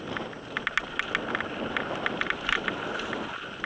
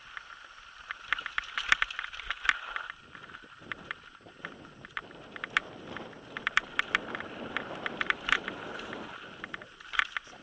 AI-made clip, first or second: second